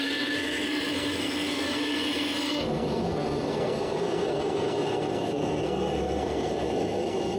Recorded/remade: remade